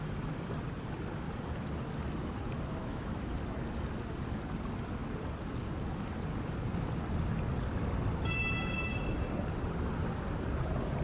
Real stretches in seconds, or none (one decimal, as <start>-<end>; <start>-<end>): 0.0-2.8; 3.3-11.0